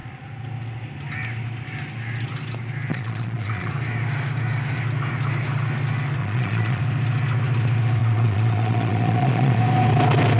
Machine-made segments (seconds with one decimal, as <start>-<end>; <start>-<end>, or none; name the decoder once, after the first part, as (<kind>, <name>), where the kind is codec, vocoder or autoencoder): 2.9-3.7 (vocoder, Vocos); 6.2-6.8; 8.0-9.6